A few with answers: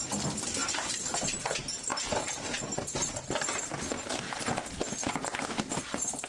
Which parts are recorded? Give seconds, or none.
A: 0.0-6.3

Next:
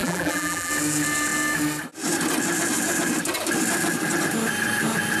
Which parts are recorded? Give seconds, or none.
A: 0.7-5.2

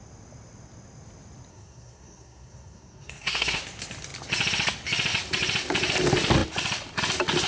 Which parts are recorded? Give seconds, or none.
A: 0.0-1.5; 3.6-7.5